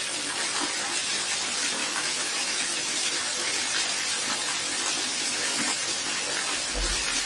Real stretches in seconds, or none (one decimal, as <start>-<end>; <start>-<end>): 0.0-1.8; 3.2-5.1; 5.6-7.3